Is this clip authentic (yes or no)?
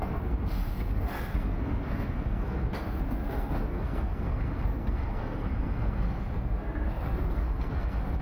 no